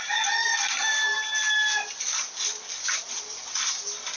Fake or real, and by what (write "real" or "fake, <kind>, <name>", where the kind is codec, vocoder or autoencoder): real